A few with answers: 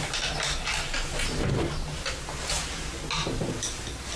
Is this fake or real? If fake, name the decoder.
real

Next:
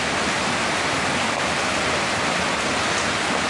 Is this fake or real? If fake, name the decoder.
real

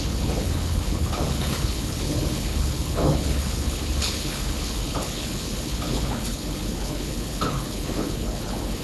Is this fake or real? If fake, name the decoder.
fake, codec, HILCodec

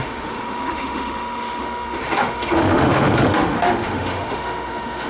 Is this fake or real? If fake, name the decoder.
fake, autoencoder, DAC-VAE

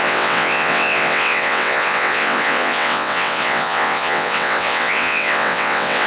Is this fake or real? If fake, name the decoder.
fake, vocoder, WaveNeXt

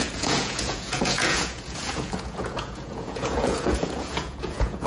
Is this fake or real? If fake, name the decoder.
fake, vocoder, Vocos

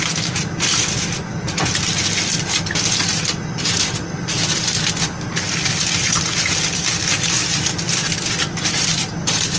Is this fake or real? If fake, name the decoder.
real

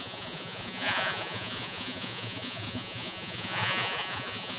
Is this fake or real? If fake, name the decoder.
fake, vocoder, Vocos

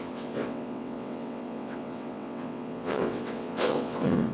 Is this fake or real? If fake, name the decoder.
fake, vocoder, WaveNeXt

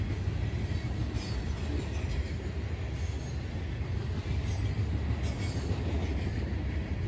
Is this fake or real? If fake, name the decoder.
real